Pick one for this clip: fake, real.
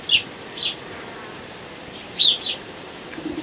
real